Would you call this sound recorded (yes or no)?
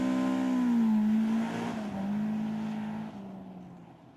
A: yes